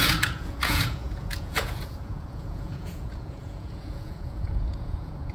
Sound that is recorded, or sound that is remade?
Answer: remade